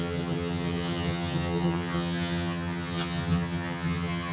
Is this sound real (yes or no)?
no